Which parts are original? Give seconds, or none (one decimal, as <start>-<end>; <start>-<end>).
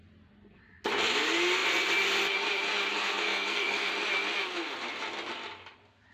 0.0-2.9; 3.9-6.1